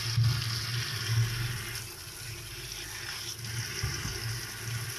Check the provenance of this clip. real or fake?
real